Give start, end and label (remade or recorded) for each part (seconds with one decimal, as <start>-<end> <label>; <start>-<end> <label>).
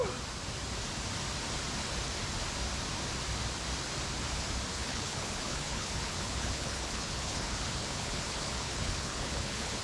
0.0-4.7 recorded; 4.7-9.8 remade